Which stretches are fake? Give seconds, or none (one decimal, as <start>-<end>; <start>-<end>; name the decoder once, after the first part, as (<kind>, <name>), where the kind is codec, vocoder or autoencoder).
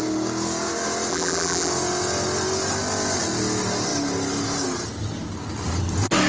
1.1-1.7 (vocoder, BigVGAN v2)